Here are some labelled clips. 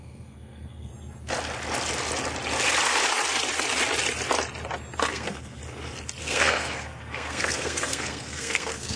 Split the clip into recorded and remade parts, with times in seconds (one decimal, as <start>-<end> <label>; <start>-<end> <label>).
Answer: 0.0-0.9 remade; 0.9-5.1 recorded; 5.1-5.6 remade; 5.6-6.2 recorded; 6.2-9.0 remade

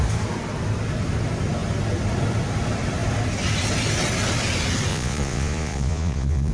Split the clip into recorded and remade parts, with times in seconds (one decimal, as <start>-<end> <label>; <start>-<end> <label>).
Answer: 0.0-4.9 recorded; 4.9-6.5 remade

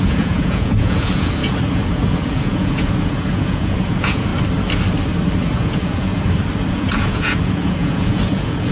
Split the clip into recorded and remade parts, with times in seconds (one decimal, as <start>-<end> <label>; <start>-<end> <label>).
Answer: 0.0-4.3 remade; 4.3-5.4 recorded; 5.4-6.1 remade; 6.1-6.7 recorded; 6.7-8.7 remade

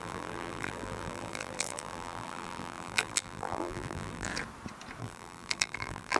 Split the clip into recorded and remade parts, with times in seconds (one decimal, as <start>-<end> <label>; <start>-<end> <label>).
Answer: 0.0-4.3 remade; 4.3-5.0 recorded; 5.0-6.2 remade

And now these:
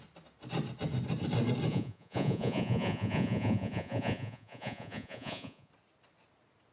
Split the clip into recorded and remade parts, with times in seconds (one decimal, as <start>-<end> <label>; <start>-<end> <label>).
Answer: 0.0-1.7 recorded; 1.7-5.7 remade; 5.7-6.7 recorded

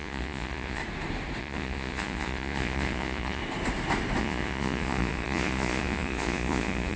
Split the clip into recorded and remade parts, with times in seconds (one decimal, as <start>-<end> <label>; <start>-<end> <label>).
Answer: 0.0-0.8 remade; 0.8-1.4 recorded; 1.4-3.4 remade; 3.4-4.2 recorded; 4.2-7.0 remade

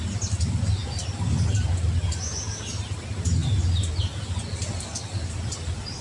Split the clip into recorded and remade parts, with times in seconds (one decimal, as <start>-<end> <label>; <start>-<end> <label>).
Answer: 0.0-6.0 recorded

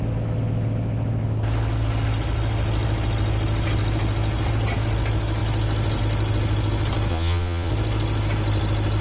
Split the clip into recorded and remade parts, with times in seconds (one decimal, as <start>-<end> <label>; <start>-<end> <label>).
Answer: 0.0-7.1 recorded; 7.1-7.7 remade; 7.7-9.0 recorded